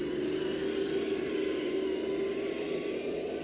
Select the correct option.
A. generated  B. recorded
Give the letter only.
B